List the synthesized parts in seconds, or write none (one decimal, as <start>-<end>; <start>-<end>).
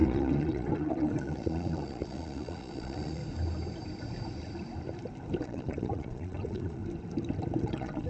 0.0-3.2; 5.4-6.8; 7.6-8.1